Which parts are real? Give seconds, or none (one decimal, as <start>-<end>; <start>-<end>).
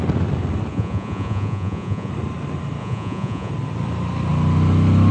0.0-0.7; 2.1-2.8; 3.5-5.1